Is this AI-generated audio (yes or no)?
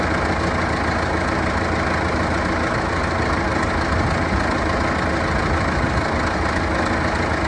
no